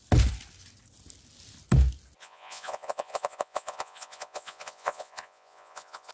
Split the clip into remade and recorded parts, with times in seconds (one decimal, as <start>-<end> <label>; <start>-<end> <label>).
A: 0.0-2.2 recorded; 2.2-6.1 remade